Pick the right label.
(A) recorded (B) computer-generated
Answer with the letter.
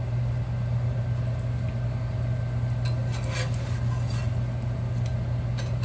A